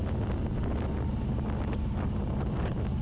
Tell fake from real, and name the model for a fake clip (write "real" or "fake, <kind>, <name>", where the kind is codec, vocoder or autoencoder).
real